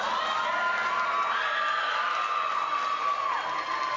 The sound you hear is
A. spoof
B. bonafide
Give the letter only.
B